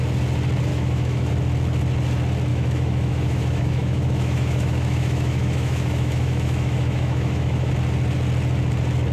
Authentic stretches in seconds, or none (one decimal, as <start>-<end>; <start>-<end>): 0.0-0.7; 1.3-2.5; 7.7-9.1